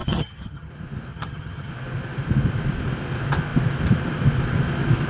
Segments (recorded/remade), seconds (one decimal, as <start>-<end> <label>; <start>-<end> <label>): 0.0-0.7 remade; 0.7-1.1 recorded; 1.1-1.7 remade; 1.7-5.1 recorded